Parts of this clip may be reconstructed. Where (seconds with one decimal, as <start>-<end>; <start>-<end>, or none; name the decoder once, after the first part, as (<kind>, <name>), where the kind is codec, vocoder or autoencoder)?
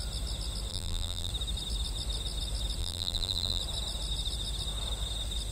0.7-1.3 (vocoder, BigVGAN v2); 2.8-3.6